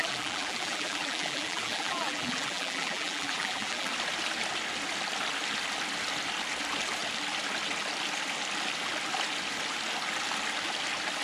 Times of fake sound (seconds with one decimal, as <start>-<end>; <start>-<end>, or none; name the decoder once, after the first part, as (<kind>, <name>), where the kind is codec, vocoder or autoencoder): 0.0-3.9 (vocoder, BigVGAN v2)